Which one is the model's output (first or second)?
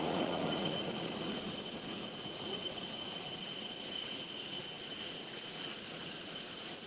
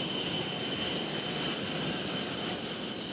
first